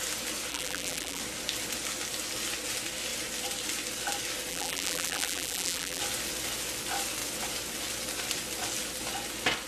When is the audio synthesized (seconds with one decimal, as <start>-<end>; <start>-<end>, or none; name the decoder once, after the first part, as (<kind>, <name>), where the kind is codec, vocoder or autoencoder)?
0.5-1.2 (vocoder, BigVGAN v2); 4.5-6.0